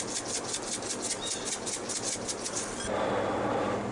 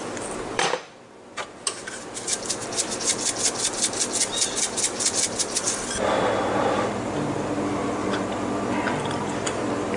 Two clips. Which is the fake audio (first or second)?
second